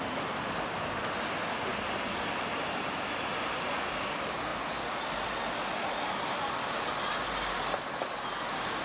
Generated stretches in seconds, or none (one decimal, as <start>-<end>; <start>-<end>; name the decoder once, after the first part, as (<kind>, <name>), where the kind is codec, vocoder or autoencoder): none